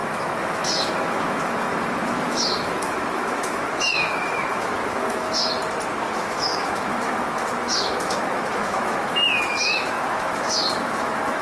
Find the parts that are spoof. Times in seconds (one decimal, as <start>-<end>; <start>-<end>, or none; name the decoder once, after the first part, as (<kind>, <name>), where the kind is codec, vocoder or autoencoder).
0.0-5.4 (autoencoder, DAC-VAE); 6.1-11.4